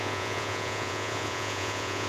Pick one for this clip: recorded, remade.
remade